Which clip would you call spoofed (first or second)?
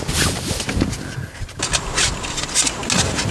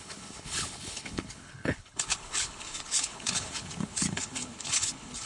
second